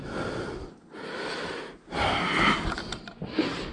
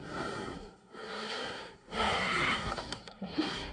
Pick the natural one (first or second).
first